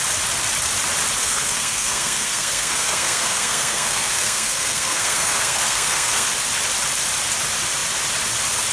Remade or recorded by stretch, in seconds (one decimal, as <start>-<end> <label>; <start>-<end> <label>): 0.0-1.2 recorded; 1.2-6.3 remade; 6.3-8.7 recorded